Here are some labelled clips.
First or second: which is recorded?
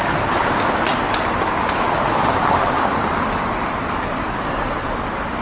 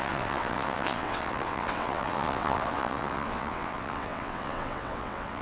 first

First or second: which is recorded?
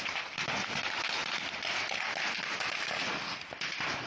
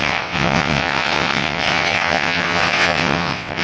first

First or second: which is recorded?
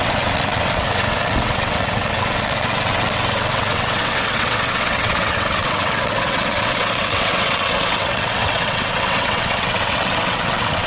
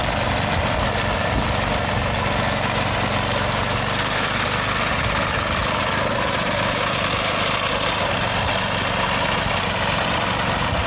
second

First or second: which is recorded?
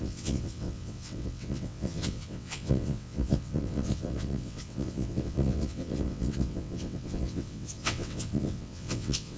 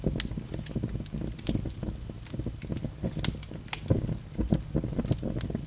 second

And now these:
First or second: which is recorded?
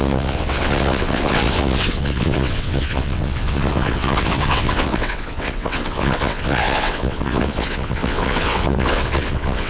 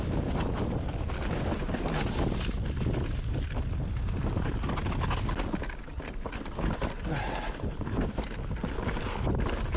second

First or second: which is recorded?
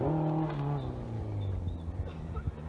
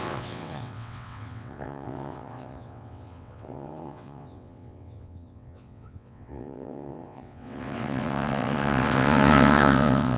first